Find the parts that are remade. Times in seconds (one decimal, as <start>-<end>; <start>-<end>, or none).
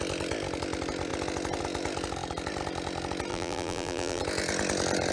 3.3-4.2